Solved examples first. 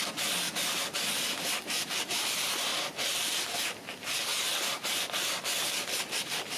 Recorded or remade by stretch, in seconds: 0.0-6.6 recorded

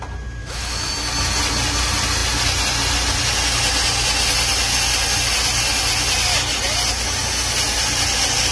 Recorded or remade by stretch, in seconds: 0.0-0.4 recorded; 0.4-0.9 remade; 0.9-8.5 recorded

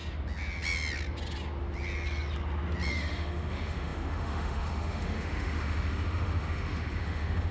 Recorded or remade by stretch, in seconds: 0.0-2.9 recorded; 2.9-7.5 remade